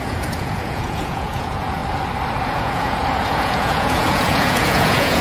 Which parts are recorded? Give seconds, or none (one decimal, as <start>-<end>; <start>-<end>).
1.8-2.4